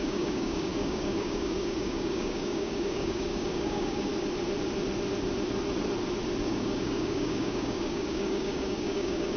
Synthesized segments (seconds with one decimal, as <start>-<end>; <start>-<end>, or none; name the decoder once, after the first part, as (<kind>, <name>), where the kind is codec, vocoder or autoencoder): 0.0-4.1 (codec, DAC); 6.4-9.4